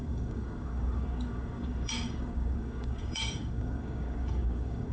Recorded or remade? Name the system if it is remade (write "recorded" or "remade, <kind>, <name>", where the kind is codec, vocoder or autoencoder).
remade, codec, DAC